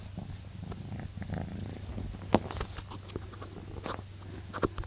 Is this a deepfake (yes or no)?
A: no